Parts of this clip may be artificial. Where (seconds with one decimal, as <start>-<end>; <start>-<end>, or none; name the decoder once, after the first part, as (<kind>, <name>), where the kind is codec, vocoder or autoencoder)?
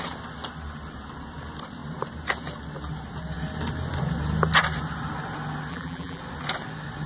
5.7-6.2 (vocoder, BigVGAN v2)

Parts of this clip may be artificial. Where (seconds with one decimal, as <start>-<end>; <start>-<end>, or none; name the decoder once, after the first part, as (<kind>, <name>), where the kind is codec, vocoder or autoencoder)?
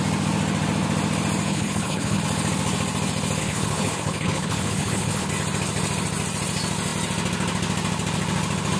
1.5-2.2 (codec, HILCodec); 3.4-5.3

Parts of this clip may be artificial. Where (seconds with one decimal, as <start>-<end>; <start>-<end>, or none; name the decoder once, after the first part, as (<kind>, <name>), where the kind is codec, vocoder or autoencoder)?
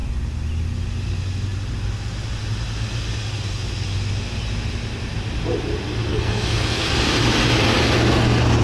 6.1-6.9 (codec, SNAC)